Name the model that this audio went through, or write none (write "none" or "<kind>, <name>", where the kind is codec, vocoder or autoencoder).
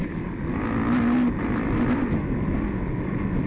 none